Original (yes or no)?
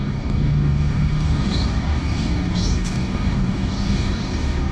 no